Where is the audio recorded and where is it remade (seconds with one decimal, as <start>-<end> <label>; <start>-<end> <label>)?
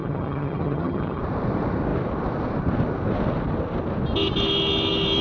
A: 0.0-1.2 remade; 1.2-5.2 recorded